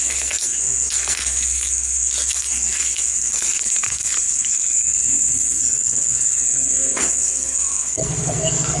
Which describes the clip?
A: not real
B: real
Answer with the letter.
A